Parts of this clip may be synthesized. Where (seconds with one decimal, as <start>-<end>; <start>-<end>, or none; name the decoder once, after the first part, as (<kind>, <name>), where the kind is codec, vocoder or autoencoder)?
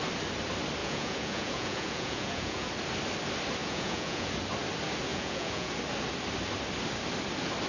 0.8-2.7 (vocoder, Vocos); 3.6-4.3; 5.1-5.7